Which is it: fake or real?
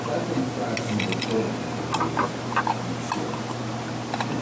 real